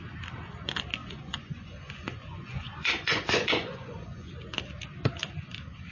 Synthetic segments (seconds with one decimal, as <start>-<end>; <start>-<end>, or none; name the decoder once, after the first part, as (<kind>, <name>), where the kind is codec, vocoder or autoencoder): 1.0-4.3 (vocoder, Vocos)